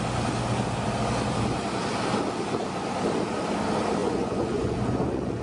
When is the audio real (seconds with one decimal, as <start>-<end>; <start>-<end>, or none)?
0.0-4.0